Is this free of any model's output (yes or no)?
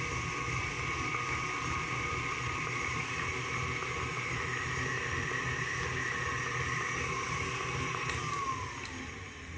no